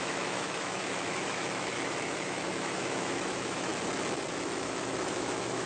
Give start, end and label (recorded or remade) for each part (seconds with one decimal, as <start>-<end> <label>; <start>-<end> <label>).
0.0-3.7 remade; 3.7-4.3 recorded; 4.3-5.7 remade